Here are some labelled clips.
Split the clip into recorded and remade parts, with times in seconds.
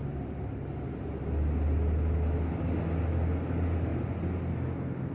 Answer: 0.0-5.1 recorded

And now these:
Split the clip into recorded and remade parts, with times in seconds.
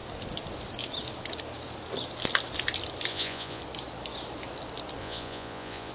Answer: 0.0-3.1 recorded; 3.1-3.6 remade; 3.6-5.0 recorded; 5.0-5.9 remade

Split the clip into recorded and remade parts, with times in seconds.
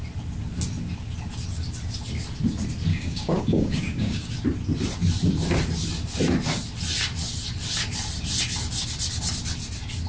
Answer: 0.0-2.9 recorded; 2.9-4.3 remade; 4.3-10.1 recorded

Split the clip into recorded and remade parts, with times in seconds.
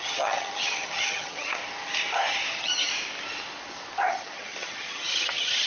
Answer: 0.0-1.6 remade; 1.6-2.5 recorded; 2.5-2.9 remade; 2.9-4.1 recorded; 4.1-5.7 remade